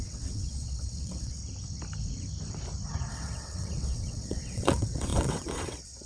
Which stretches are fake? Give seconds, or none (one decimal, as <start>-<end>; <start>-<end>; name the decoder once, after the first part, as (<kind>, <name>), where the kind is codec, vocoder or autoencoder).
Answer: 0.0-1.4 (vocoder, WaveNeXt); 3.1-6.1